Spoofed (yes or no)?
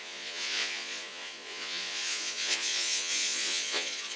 yes